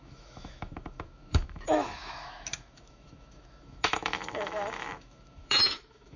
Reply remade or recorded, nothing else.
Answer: remade